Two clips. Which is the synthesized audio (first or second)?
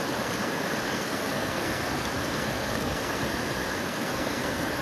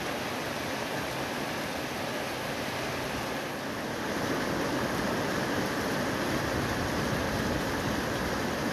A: first